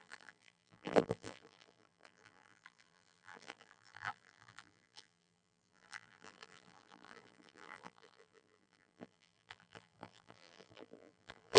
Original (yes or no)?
no